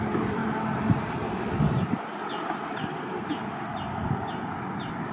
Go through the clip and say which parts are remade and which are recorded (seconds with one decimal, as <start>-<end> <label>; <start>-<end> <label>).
0.0-5.1 recorded